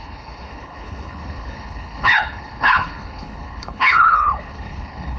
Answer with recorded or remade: remade